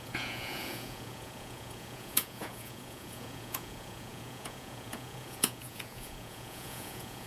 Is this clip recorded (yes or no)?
no